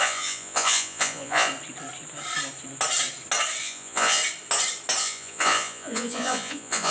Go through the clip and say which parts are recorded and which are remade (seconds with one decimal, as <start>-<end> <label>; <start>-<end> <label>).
0.0-1.5 remade; 1.5-3.6 recorded; 3.6-4.2 remade; 4.2-5.0 recorded; 5.0-6.9 remade